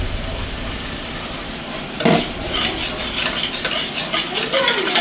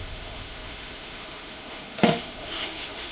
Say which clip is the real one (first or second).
first